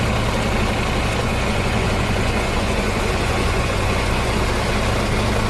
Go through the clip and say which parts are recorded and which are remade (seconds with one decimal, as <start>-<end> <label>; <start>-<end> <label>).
0.0-1.2 recorded; 1.2-4.4 remade; 4.4-5.5 recorded